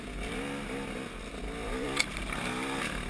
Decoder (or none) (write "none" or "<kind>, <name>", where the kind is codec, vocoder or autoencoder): none